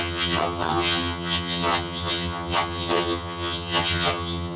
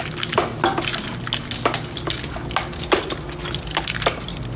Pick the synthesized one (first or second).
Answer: first